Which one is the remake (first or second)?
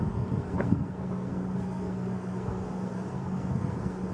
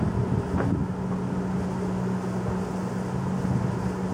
first